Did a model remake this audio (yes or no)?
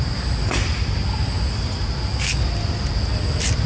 no